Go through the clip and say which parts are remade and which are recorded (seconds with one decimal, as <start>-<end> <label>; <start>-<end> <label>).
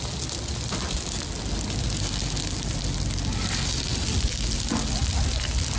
0.0-5.8 recorded